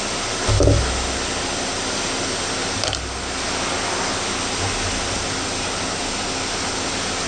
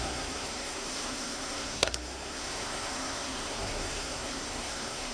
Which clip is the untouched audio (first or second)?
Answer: first